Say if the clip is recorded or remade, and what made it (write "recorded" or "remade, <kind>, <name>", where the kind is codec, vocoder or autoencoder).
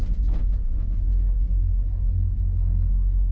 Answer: recorded